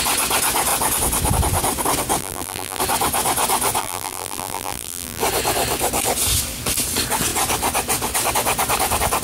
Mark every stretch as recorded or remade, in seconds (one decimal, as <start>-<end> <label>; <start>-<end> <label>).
0.0-2.2 recorded; 2.2-2.8 remade; 2.8-3.8 recorded; 3.8-5.2 remade; 5.2-9.2 recorded